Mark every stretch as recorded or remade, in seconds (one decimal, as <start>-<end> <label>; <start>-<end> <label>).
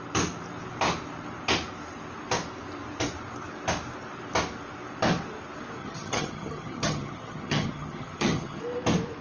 0.0-5.8 recorded; 5.8-8.6 remade; 8.6-9.2 recorded